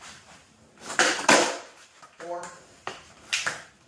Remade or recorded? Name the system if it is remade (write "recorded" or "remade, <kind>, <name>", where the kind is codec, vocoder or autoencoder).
remade, vocoder, BigVGAN v2